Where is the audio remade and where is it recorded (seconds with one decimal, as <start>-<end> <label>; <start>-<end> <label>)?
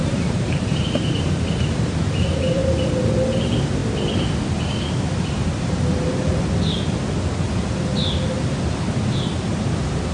0.0-2.6 remade; 2.6-3.4 recorded; 3.4-3.8 remade; 3.8-8.7 recorded; 8.7-10.1 remade